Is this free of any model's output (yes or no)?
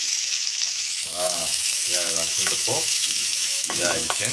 no